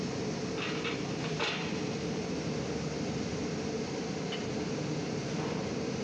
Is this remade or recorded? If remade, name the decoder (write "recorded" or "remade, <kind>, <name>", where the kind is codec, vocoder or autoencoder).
recorded